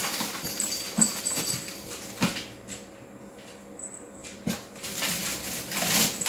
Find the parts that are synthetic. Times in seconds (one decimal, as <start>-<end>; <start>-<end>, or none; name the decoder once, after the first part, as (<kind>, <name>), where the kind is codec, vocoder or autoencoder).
none